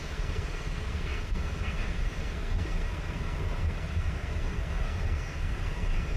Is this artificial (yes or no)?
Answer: yes